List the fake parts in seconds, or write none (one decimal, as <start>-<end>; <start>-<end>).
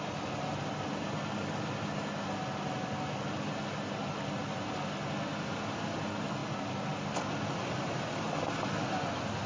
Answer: none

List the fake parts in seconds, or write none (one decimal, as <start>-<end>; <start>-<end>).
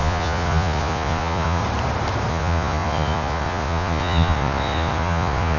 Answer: 0.0-1.6; 2.3-5.6